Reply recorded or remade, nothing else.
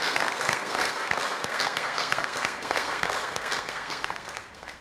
remade